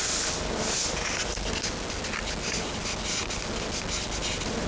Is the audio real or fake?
real